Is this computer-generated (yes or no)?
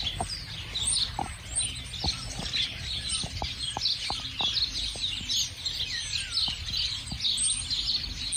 no